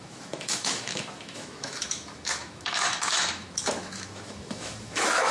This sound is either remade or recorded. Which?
remade